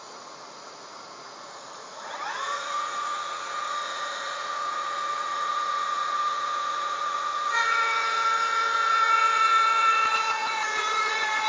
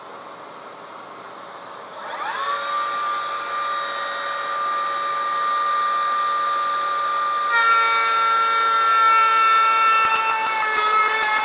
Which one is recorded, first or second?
second